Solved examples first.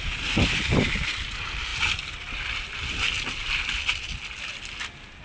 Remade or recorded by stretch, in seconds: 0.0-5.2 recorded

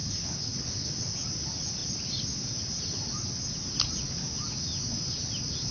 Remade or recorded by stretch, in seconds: 0.0-1.1 remade; 1.1-5.7 recorded

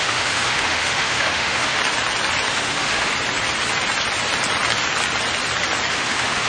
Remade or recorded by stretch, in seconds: 0.0-1.8 remade; 1.8-2.5 recorded; 2.5-3.1 remade; 3.1-5.9 recorded; 5.9-6.5 remade

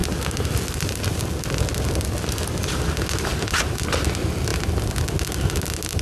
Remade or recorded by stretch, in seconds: 0.0-6.0 recorded

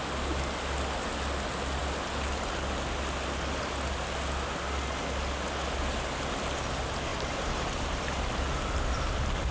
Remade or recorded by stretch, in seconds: 0.0-7.1 recorded; 7.1-8.0 remade; 8.0-9.5 recorded

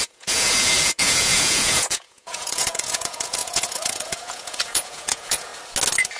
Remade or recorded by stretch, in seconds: 0.0-5.5 remade; 5.5-6.2 recorded

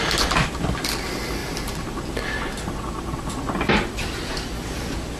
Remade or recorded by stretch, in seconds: 0.0-5.2 recorded

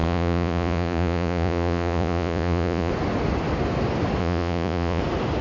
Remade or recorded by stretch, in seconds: 0.0-2.9 remade; 2.9-4.2 recorded; 4.2-5.0 remade; 5.0-5.4 recorded